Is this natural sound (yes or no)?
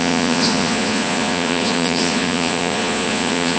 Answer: no